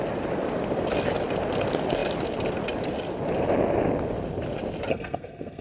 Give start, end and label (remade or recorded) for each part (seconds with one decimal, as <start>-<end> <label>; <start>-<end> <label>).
0.0-4.9 recorded; 4.9-5.6 remade